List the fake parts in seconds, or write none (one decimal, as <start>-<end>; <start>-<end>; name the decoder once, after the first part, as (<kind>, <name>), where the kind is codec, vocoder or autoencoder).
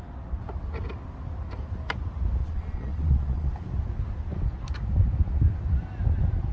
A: 2.4-3.5 (vocoder, Vocos)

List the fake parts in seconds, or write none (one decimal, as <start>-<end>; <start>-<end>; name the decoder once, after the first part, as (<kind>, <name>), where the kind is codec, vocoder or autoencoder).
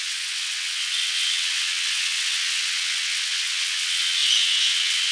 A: 0.0-5.1 (vocoder, WaveNeXt)